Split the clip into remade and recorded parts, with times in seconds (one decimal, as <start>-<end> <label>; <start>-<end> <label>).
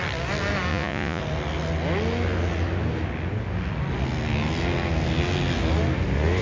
0.0-0.7 recorded; 0.7-1.2 remade; 1.2-6.4 recorded